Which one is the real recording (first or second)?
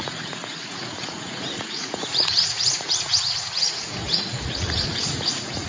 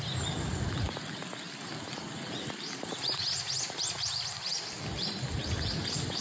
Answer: second